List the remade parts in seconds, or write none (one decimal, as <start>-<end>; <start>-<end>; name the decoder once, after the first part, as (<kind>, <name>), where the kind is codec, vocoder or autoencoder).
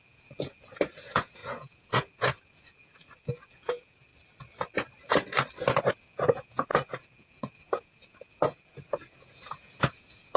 0.0-4.1 (vocoder, Vocos); 5.9-10.4